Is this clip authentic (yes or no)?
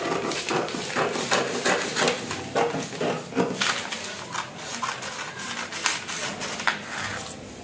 yes